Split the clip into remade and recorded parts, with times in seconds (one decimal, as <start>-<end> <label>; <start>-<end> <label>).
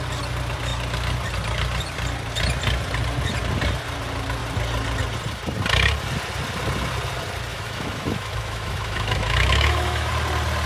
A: 0.0-7.5 recorded; 7.5-10.1 remade; 10.1-10.7 recorded